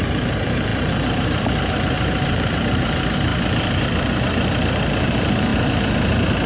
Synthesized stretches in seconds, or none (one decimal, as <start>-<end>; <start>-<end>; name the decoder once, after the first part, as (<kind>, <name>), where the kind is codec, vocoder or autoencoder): 0.0-3.3 (vocoder, BigVGAN v2); 3.8-5.5